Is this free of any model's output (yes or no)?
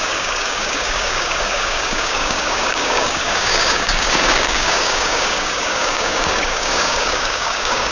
no